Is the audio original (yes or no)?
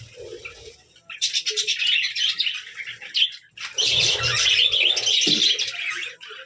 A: yes